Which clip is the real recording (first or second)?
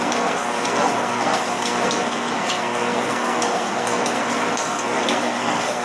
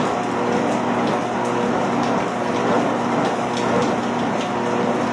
second